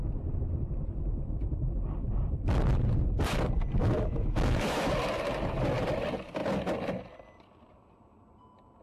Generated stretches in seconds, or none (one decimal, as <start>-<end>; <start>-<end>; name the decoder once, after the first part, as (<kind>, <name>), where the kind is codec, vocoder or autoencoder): 3.8-4.9 (autoencoder, DAC-VAE)

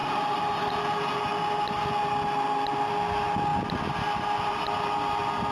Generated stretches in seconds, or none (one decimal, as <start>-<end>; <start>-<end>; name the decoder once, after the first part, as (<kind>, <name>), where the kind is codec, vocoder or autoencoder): 0.0-0.7 (vocoder, BigVGAN v2)

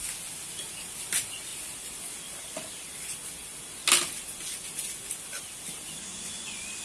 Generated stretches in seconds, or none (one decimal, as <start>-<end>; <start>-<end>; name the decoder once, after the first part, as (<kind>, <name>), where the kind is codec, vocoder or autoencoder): 6.1-6.8 (vocoder, Vocos)